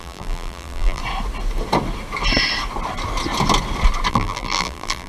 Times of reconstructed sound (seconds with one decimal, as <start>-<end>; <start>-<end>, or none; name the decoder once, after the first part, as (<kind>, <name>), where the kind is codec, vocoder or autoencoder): 0.0-1.0 (vocoder, BigVGAN v2); 4.1-5.1